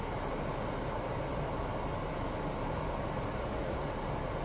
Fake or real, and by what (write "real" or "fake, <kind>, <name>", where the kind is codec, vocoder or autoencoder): real